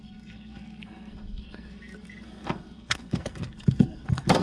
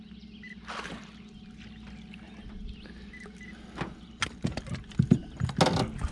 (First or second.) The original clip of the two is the second